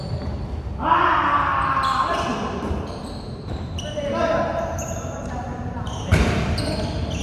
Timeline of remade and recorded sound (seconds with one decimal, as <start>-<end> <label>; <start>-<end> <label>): 0.0-2.3 recorded; 2.3-6.6 remade; 6.6-7.2 recorded